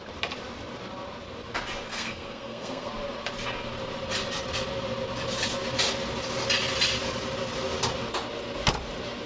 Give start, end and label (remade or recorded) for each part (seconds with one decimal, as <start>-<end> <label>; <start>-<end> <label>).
0.0-1.9 recorded; 1.9-2.9 remade; 2.9-9.3 recorded